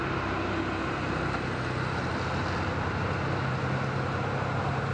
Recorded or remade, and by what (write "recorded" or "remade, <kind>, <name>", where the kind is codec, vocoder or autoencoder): recorded